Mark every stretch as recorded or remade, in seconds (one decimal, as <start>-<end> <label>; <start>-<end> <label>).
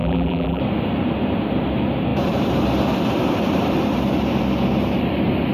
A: 0.0-0.6 remade; 0.6-5.5 recorded